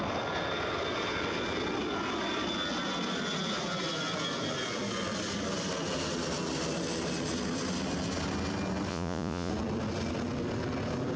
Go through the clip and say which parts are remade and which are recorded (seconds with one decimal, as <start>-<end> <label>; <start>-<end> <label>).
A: 0.0-8.9 recorded; 8.9-9.5 remade; 9.5-11.2 recorded